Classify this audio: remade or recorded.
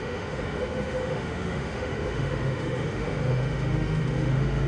remade